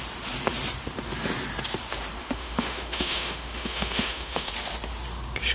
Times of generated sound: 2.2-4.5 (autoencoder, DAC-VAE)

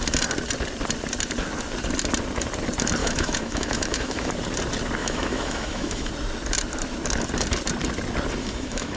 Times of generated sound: 3.0-4.3 (autoencoder, DAC-VAE); 5.0-6.1; 8.4-9.0